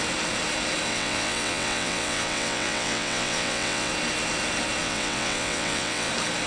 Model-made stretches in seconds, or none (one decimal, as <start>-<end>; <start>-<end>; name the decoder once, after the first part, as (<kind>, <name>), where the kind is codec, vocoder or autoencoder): 0.9-3.9 (vocoder, WaveNeXt); 4.8-6.1